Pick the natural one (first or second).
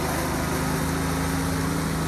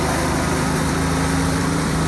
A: first